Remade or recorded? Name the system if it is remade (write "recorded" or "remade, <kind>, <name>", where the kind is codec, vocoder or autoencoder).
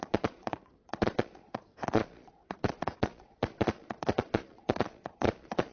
remade, vocoder, Vocos